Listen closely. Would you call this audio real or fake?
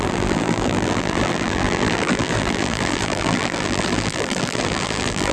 fake